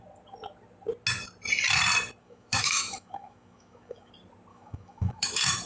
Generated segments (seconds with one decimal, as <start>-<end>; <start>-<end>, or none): 2.2-4.1; 4.5-5.7